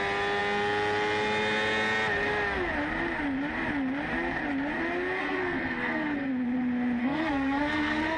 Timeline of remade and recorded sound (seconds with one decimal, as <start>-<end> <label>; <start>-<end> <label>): 0.0-5.2 recorded; 5.2-6.3 remade; 6.3-7.0 recorded; 7.0-8.2 remade